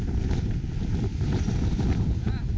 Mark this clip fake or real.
real